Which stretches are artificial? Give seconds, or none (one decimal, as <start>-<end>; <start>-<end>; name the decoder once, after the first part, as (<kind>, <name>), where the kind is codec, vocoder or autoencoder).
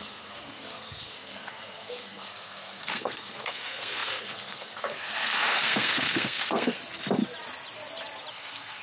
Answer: 0.0-6.8 (codec, SNAC); 8.3-8.8